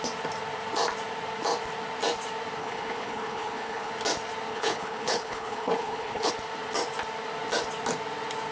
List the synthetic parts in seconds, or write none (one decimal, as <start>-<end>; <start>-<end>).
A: 2.6-3.9; 4.5-6.3